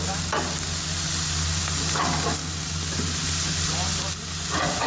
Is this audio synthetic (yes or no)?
no